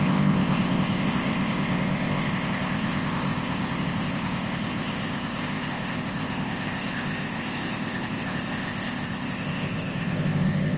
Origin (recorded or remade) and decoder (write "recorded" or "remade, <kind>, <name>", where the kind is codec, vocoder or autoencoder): remade, codec, ZipCodec